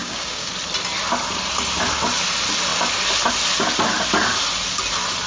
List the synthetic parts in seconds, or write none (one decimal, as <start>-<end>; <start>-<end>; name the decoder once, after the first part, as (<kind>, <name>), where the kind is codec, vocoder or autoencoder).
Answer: 0.0-0.5 (codec, DAC)